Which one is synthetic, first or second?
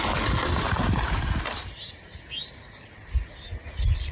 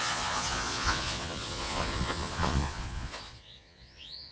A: second